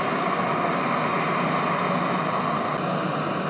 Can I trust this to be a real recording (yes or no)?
yes